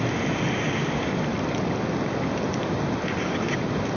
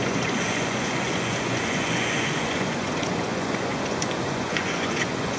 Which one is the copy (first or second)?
second